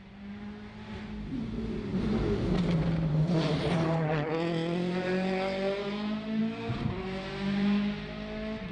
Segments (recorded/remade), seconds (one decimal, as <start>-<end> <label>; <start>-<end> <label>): 0.0-5.8 recorded; 5.8-6.4 remade; 6.4-8.7 recorded